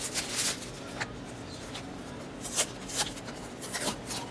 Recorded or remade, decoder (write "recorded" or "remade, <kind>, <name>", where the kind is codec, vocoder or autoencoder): recorded